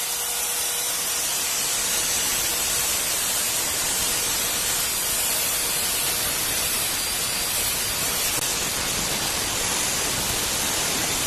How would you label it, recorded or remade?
remade